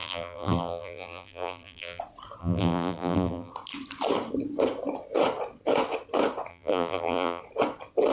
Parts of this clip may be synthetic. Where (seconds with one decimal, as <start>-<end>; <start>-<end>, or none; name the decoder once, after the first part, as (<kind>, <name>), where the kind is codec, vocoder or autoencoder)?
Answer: 0.0-2.0 (vocoder, BigVGAN v2); 2.4-3.5; 6.5-7.4